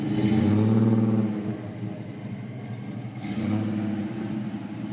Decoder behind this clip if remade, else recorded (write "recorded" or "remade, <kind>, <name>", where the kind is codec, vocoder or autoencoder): recorded